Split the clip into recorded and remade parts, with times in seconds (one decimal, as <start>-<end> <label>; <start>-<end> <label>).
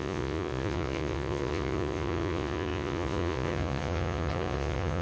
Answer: 0.0-5.0 remade